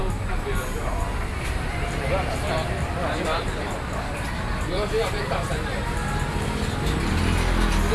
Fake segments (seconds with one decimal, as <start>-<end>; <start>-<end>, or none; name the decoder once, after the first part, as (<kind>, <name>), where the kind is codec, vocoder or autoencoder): 2.5-4.7 (vocoder, BigVGAN v2)